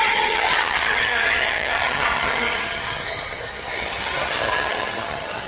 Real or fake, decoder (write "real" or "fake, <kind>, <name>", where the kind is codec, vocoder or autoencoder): fake, vocoder, HiFi-GAN